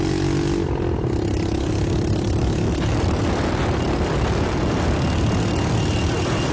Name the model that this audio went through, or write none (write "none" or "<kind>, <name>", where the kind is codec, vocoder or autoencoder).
none